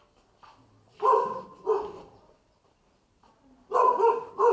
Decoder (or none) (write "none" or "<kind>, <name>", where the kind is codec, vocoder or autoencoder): none